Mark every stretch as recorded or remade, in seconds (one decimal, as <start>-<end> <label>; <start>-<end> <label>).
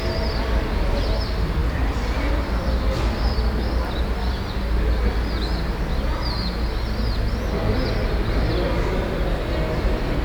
0.0-10.2 recorded